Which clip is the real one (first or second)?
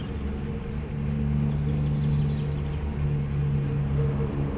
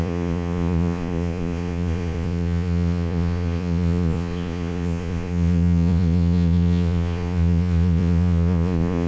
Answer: first